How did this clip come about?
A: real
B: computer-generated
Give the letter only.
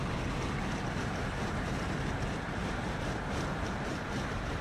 B